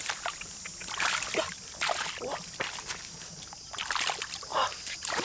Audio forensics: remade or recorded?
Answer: recorded